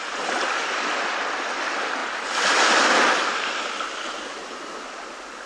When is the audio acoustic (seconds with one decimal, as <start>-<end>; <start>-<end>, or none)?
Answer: none